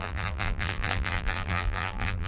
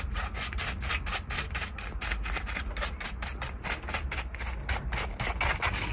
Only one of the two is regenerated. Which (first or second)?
first